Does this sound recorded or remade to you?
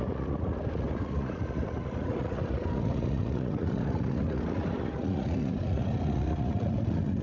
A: remade